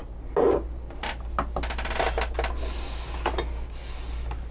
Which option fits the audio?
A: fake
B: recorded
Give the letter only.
B